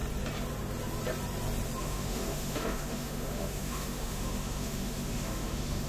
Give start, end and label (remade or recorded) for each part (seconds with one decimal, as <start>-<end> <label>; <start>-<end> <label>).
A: 0.0-1.8 recorded; 1.8-5.9 remade

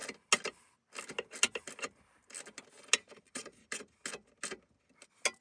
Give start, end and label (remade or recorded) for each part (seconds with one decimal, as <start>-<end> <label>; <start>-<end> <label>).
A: 0.0-3.2 recorded; 3.2-3.6 remade; 3.6-5.4 recorded

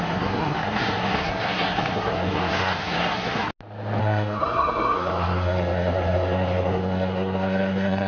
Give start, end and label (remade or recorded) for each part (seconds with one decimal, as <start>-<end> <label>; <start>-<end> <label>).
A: 0.0-3.5 remade; 3.5-4.0 recorded; 4.0-8.1 remade

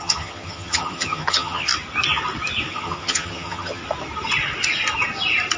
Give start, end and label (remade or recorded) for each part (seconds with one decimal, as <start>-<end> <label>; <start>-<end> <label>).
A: 0.0-1.7 remade; 1.7-2.7 recorded; 2.7-3.8 remade; 3.8-5.6 recorded

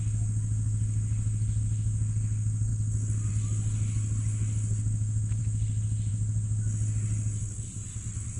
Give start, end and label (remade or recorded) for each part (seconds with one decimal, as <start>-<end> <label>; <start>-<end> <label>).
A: 0.0-8.4 recorded

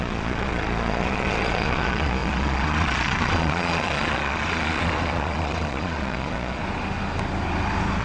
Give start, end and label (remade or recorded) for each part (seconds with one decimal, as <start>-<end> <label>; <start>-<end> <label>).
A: 0.0-6.6 remade; 6.6-8.0 recorded